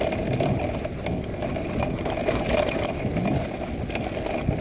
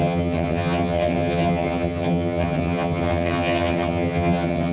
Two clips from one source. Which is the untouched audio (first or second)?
first